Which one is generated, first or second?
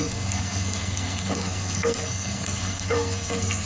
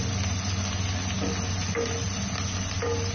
first